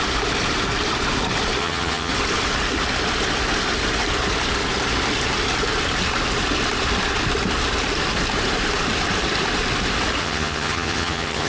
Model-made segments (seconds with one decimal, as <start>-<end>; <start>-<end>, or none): 1.6-2.1; 10.2-11.5